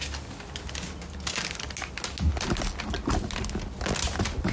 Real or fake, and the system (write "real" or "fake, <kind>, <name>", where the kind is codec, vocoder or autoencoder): real